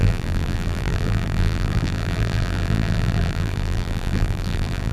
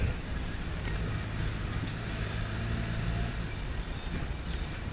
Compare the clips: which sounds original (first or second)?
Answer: second